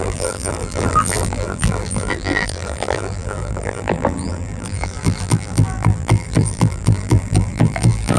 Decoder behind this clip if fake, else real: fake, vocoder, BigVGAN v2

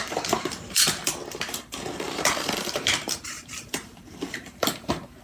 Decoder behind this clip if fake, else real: fake, vocoder, BigVGAN v2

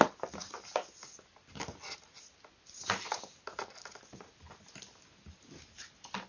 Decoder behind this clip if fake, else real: real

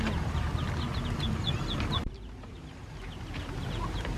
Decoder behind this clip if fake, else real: real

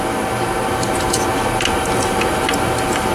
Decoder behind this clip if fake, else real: real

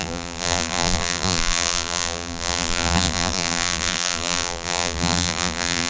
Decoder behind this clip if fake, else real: fake, vocoder, BigVGAN v2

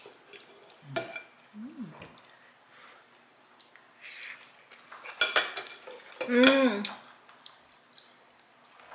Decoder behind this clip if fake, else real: real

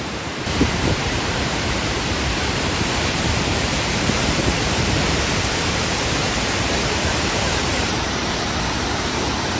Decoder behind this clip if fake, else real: fake, vocoder, BigVGAN v2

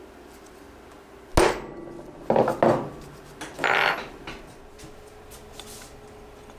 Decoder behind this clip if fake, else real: real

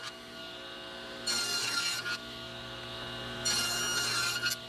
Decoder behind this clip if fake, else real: real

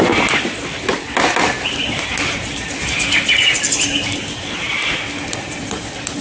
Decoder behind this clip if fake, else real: real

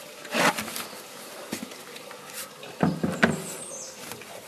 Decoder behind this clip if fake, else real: real